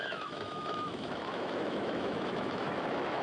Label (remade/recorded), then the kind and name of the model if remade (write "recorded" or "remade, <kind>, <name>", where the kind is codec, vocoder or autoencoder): remade, autoencoder, DAC-VAE